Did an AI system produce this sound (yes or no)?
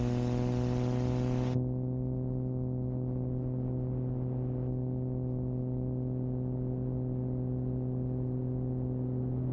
no